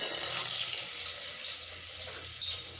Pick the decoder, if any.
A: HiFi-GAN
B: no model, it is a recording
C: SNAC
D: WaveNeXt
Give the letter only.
B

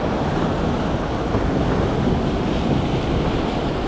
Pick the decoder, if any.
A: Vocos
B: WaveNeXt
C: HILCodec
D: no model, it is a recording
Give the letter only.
D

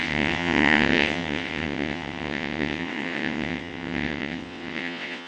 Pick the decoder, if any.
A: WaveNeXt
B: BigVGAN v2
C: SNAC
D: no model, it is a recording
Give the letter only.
A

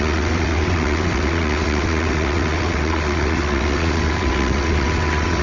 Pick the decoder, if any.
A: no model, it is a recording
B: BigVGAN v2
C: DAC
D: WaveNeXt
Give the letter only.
D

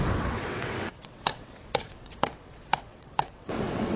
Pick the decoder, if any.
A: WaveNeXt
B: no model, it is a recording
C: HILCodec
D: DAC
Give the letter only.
A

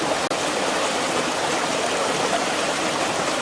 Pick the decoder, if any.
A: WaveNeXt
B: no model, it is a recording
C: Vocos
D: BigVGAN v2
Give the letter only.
B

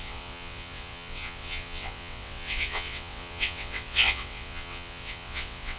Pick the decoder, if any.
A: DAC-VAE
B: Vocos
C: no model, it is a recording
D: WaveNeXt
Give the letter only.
D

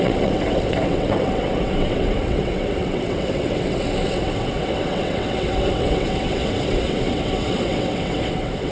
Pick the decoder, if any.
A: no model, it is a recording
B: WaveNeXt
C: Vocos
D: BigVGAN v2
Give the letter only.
B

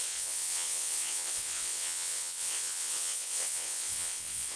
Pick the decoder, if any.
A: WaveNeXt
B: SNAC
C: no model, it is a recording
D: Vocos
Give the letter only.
A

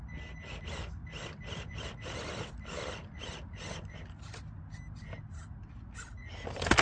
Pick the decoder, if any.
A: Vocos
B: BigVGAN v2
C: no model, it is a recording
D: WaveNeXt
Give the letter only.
C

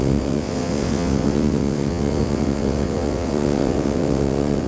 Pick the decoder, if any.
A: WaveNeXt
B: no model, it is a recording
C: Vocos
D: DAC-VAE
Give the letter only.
A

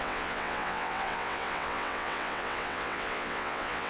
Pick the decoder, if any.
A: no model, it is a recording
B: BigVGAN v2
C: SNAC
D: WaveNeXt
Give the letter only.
D